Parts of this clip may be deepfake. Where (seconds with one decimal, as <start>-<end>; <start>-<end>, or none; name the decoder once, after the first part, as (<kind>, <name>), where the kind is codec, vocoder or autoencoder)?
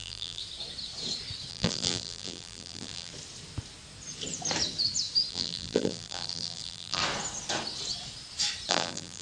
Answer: 0.0-0.4 (vocoder, BigVGAN v2); 1.5-3.1; 5.3-7.0; 8.7-9.2